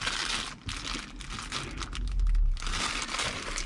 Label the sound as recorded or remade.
recorded